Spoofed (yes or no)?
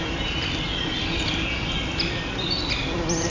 no